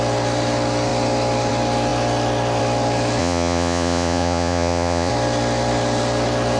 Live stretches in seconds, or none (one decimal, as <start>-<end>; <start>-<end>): 0.0-3.2; 5.1-6.6